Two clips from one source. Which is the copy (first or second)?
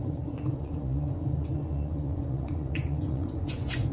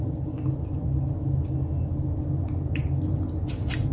first